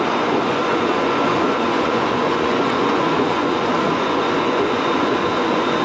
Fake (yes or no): yes